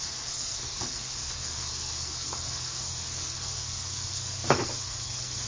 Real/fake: fake